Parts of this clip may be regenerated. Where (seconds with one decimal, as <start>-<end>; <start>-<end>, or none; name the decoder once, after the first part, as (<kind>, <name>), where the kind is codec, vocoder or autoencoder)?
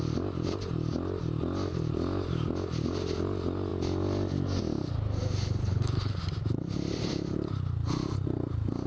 5.6-6.2 (codec, HILCodec)